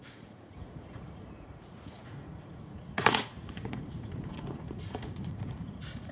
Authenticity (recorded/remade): remade